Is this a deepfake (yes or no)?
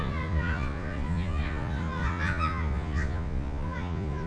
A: yes